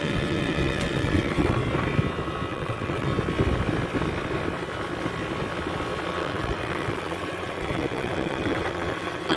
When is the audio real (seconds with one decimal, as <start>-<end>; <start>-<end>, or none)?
1.6-2.5; 3.1-6.1